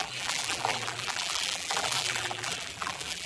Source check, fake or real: fake